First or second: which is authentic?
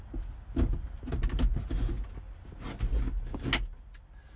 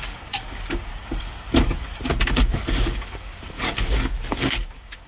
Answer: first